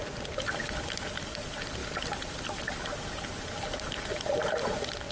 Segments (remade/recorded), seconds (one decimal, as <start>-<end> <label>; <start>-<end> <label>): 0.0-5.1 recorded